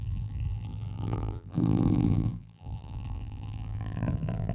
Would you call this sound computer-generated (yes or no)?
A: yes